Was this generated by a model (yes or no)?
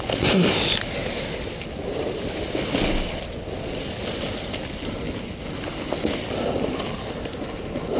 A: no